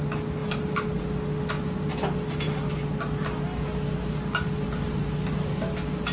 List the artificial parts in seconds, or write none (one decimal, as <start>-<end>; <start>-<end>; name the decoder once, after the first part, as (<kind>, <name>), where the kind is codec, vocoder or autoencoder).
none